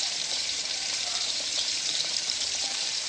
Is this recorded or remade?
remade